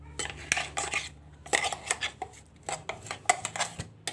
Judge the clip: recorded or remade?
recorded